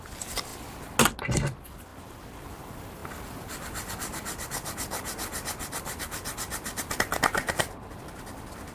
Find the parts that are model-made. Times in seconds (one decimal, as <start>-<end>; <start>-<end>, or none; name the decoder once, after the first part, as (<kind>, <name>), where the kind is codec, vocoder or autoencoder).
none